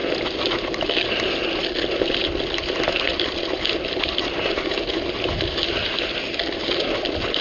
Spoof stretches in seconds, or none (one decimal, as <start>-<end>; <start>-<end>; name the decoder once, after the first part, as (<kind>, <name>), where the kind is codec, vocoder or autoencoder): none